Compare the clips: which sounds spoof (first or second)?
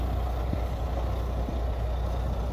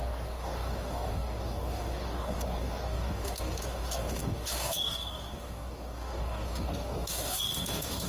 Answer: second